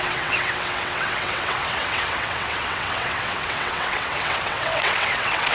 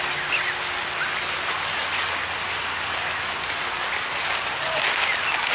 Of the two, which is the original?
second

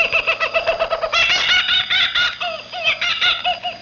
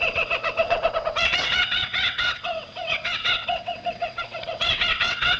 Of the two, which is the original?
first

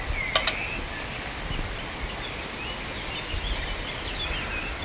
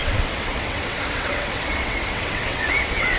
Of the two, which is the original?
first